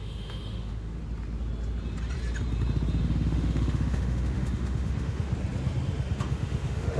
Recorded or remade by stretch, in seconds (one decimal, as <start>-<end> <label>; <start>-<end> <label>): 0.0-1.0 remade; 1.0-3.0 recorded; 3.0-5.3 remade; 5.3-6.2 recorded; 6.2-7.0 remade